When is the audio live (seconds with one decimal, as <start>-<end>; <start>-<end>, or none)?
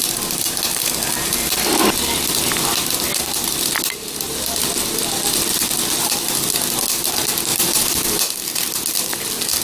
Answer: 0.0-7.5; 8.2-9.6